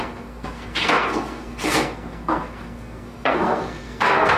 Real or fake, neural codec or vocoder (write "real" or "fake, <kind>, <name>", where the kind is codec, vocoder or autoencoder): fake, codec, SNAC